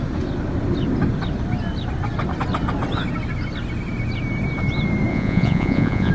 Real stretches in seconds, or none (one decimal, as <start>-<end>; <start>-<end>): 0.0-5.1